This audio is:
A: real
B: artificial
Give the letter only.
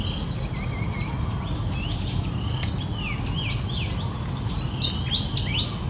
A